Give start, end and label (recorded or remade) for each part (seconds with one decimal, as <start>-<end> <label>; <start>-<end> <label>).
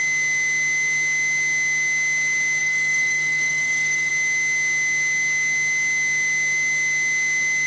0.0-2.6 recorded; 2.6-4.1 remade; 4.1-7.7 recorded